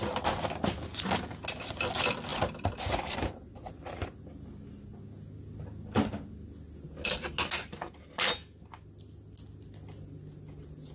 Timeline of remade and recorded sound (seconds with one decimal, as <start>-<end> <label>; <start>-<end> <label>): 0.0-10.9 recorded